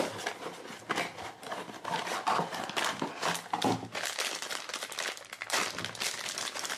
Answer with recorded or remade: recorded